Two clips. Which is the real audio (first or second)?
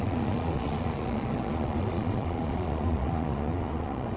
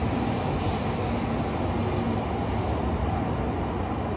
second